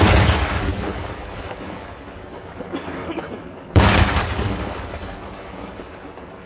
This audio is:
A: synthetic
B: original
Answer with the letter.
A